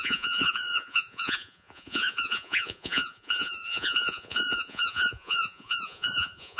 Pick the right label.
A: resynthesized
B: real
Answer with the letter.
A